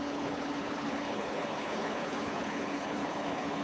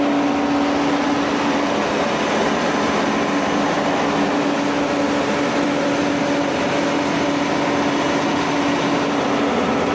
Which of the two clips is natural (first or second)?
second